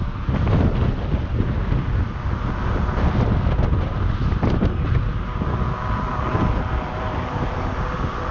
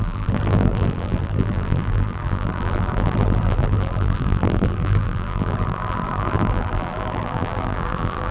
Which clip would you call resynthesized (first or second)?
second